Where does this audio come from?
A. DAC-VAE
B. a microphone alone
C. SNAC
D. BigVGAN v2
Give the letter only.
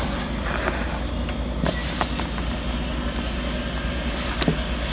B